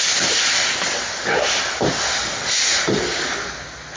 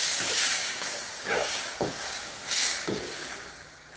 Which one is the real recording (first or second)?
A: first